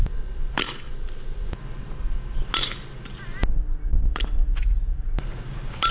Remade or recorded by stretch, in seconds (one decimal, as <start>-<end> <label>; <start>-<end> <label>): 0.0-5.9 recorded